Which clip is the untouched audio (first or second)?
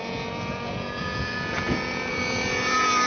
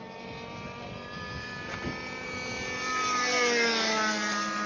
second